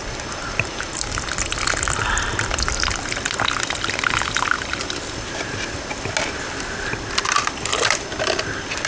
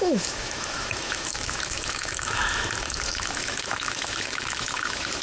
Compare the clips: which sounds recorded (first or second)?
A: first